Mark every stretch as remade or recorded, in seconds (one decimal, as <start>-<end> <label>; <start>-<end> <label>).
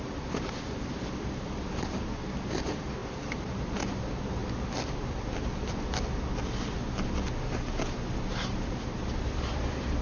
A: 0.0-4.4 remade; 4.4-7.4 recorded; 7.4-10.0 remade